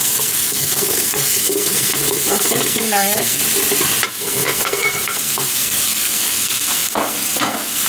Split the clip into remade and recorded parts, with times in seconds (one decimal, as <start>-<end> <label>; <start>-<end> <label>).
0.0-3.4 remade; 3.4-4.1 recorded; 4.1-7.9 remade

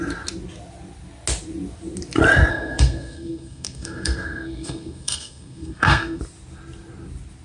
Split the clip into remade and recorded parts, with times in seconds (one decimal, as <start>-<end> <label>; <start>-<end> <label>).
0.0-2.5 recorded; 2.5-6.2 remade; 6.2-7.4 recorded

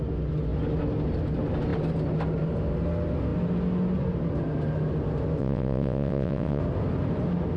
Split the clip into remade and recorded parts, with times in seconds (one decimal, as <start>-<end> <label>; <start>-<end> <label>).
0.0-5.4 recorded; 5.4-6.6 remade; 6.6-7.6 recorded

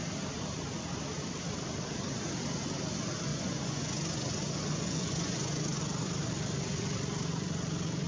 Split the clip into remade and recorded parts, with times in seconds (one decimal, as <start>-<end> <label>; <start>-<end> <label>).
0.0-3.3 recorded; 3.3-5.8 remade; 5.8-8.1 recorded

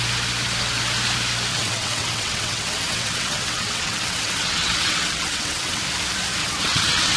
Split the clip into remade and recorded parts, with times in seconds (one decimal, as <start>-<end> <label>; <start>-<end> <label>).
0.0-1.5 recorded; 1.5-5.8 remade; 5.8-6.4 recorded; 6.4-7.2 remade

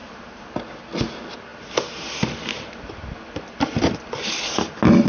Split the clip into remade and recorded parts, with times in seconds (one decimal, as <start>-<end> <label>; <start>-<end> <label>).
0.0-0.8 remade; 0.8-5.1 recorded